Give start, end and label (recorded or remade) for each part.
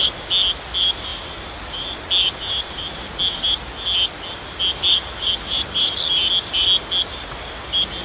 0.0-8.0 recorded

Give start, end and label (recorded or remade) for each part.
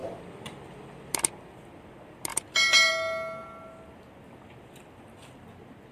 0.0-5.9 recorded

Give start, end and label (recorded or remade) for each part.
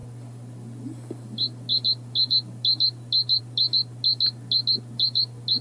0.0-5.6 recorded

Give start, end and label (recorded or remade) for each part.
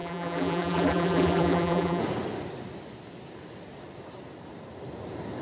0.0-2.0 remade; 2.0-5.4 recorded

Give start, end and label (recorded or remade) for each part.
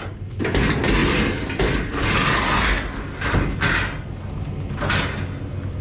0.0-5.8 recorded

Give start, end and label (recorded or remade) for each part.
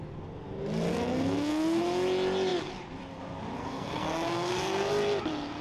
0.0-0.9 recorded; 0.9-1.8 remade; 1.8-3.6 recorded; 3.6-4.9 remade; 4.9-5.6 recorded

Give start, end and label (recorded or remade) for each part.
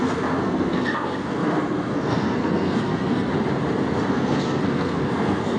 0.0-3.3 remade; 3.3-4.1 recorded; 4.1-5.6 remade